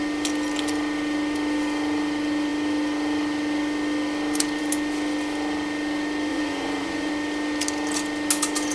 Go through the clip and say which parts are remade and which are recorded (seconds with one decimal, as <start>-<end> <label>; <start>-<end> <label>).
0.0-6.3 recorded; 6.3-7.1 remade; 7.1-8.7 recorded